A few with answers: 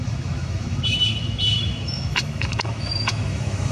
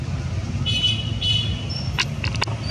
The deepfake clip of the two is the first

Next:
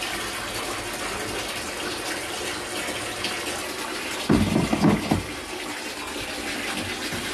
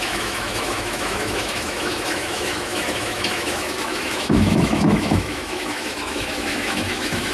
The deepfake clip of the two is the second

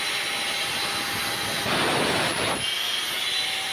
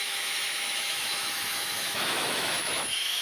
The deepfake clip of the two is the second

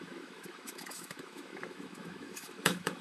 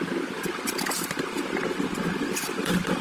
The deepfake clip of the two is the first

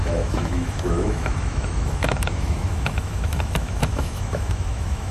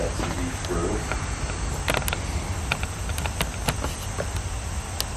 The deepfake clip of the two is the first